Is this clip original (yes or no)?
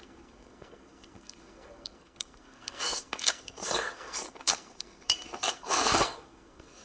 no